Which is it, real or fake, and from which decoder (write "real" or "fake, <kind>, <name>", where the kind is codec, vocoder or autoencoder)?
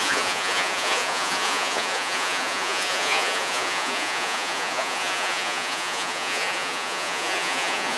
fake, vocoder, Vocos